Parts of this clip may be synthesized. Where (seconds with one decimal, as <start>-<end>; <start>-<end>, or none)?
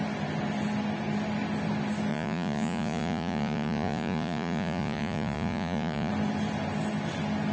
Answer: 2.1-6.1